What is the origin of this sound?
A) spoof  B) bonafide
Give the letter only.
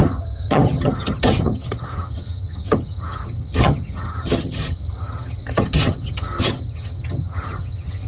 A